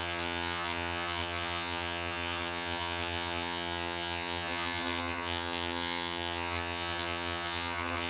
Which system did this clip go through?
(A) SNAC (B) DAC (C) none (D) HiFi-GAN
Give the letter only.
D